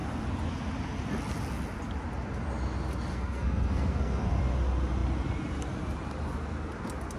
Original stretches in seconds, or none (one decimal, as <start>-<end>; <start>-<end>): 0.0-3.1; 4.4-7.2